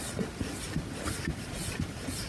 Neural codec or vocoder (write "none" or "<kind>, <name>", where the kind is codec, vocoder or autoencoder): none